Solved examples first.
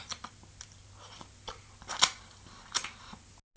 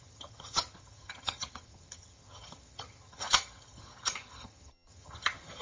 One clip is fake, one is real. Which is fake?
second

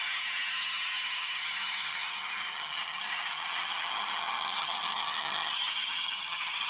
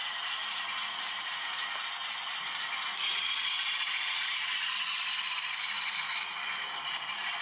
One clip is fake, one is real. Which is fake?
first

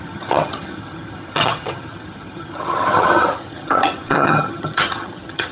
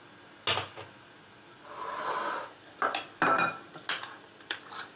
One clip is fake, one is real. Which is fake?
first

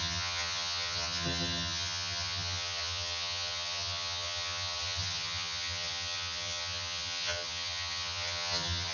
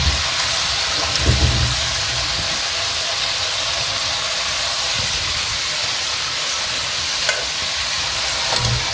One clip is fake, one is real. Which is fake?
first